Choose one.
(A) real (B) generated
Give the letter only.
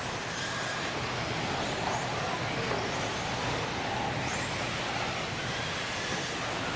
B